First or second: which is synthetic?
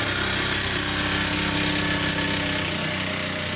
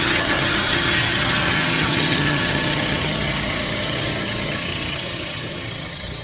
second